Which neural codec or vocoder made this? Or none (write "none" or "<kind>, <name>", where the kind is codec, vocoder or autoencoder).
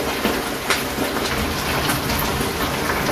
none